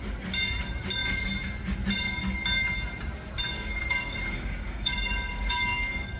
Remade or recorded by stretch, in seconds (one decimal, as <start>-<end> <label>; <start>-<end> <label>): 0.0-3.5 recorded; 3.5-6.2 remade